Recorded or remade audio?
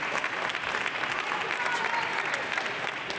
recorded